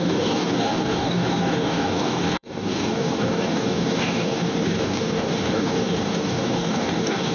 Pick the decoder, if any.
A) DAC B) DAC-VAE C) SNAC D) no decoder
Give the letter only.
A